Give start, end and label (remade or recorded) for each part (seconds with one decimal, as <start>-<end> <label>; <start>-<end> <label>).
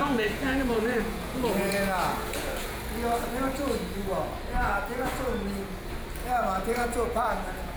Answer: 0.0-2.8 remade; 2.8-6.2 recorded; 6.2-7.8 remade